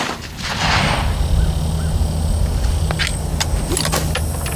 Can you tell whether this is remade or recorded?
recorded